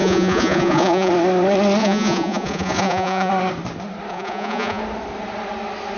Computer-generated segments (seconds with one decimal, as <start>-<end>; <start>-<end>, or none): 0.0-1.1; 1.8-3.3; 4.1-4.8